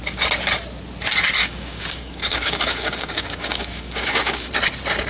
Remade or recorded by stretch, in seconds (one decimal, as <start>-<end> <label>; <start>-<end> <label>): 0.0-1.4 recorded; 1.4-4.5 remade; 4.5-5.1 recorded